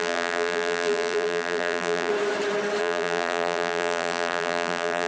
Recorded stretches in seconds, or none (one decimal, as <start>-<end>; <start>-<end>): 2.1-2.8